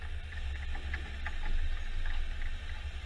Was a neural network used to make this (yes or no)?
no